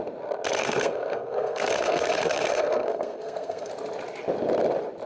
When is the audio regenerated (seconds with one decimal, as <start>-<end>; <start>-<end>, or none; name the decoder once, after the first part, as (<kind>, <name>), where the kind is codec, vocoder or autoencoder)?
0.6-3.7 (codec, SNAC)